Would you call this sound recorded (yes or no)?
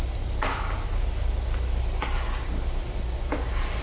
yes